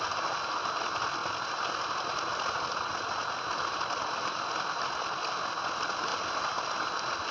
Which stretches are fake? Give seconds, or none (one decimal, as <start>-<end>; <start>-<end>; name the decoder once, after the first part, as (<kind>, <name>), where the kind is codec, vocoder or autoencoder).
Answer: none